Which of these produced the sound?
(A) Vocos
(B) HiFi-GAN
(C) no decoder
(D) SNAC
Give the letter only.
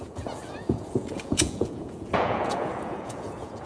A